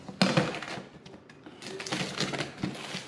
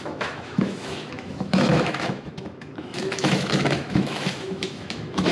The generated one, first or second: second